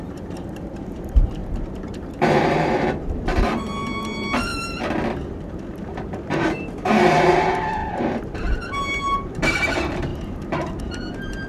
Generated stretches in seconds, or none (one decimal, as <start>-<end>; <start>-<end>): 0.0-4.5; 5.9-11.5